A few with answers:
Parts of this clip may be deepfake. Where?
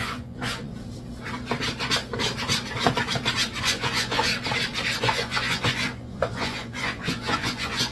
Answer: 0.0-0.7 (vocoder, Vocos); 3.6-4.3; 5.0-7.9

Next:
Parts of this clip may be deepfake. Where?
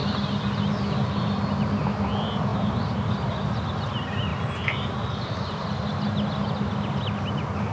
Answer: 2.5-3.6 (vocoder, BigVGAN v2); 4.3-5.7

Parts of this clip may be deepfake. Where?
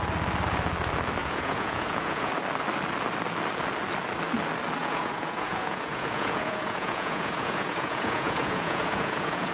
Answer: 1.2-2.3 (vocoder, Vocos); 4.8-9.5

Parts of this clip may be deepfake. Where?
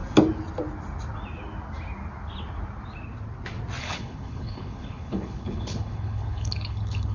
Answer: 3.8-7.1 (codec, HILCodec)